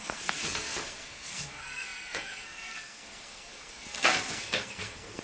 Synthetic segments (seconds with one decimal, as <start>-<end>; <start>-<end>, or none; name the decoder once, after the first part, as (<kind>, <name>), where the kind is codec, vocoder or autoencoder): 0.0-5.2 (codec, SNAC)